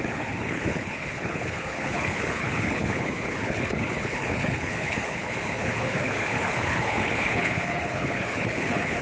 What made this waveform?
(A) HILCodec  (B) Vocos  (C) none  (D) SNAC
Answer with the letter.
A